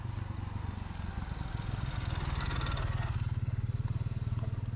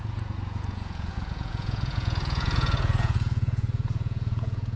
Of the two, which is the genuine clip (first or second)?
first